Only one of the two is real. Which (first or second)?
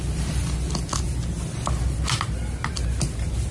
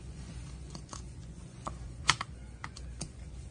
first